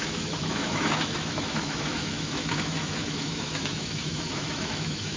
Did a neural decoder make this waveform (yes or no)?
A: yes